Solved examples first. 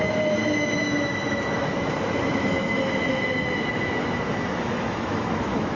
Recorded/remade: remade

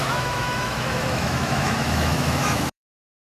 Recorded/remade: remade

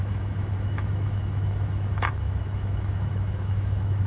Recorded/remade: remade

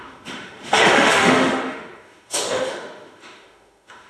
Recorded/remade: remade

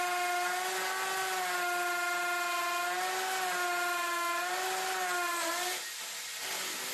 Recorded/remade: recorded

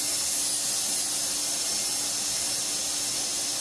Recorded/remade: recorded